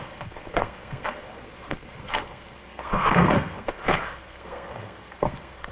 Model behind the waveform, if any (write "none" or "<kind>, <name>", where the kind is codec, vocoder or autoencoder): codec, SNAC